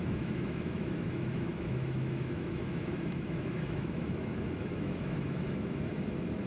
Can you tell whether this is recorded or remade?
remade